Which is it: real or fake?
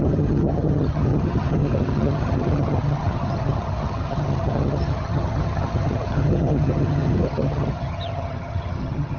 fake